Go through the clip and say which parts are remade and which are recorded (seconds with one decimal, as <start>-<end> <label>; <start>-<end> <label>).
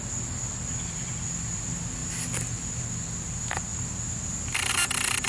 0.0-5.3 recorded